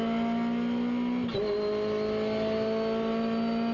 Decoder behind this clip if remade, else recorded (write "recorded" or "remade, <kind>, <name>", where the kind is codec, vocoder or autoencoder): recorded